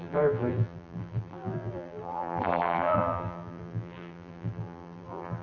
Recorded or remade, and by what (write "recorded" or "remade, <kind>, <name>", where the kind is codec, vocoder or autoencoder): remade, vocoder, BigVGAN v2